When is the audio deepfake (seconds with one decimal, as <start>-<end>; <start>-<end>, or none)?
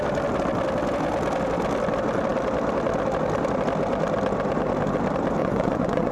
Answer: 5.4-6.1